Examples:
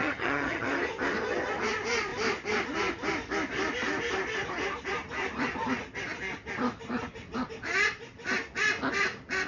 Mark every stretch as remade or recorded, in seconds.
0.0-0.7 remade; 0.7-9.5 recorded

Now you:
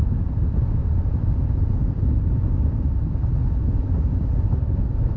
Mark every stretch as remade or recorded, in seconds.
0.0-0.8 remade; 0.8-3.9 recorded; 3.9-5.2 remade

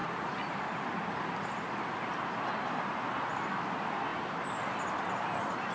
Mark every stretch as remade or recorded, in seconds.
0.0-5.7 recorded

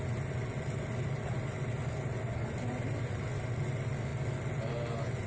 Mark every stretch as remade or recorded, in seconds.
0.0-5.3 recorded